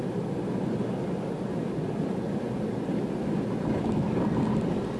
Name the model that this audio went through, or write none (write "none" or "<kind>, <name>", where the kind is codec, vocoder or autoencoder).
none